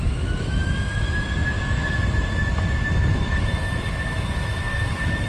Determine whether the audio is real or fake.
fake